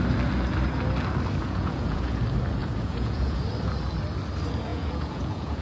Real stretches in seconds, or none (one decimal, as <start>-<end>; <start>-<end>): 0.0-1.4; 2.2-2.6; 3.4-4.7